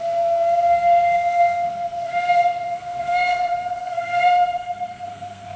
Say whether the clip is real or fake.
fake